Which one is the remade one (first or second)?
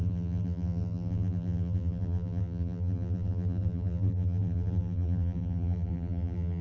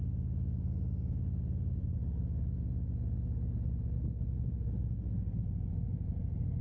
first